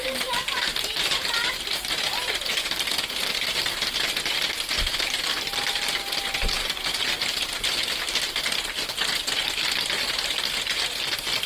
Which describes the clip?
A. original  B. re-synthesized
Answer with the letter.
B